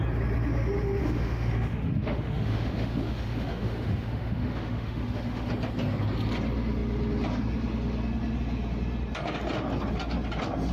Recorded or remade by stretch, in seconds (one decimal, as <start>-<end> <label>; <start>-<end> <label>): 0.0-1.0 recorded; 1.0-5.5 remade; 5.5-10.7 recorded